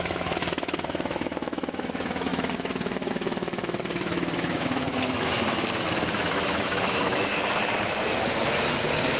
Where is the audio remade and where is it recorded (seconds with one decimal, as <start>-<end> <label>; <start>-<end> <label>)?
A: 0.0-7.3 remade; 7.3-9.2 recorded